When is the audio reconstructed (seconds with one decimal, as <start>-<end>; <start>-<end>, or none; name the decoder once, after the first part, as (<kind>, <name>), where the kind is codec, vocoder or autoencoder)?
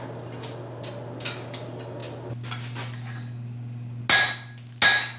none